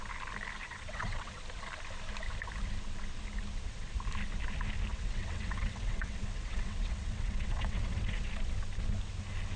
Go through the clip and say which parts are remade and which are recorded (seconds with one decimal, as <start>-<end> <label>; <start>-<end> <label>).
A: 0.0-0.6 recorded; 0.6-1.4 remade; 1.4-4.9 recorded; 4.9-8.3 remade; 8.3-9.6 recorded